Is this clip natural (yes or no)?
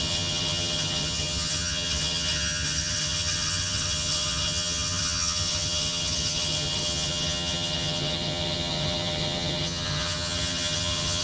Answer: no